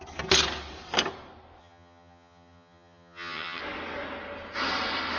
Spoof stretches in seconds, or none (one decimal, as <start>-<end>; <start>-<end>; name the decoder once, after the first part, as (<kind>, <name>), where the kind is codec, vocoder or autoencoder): 1.6-3.6 (vocoder, HiFi-GAN)